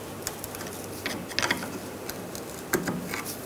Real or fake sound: real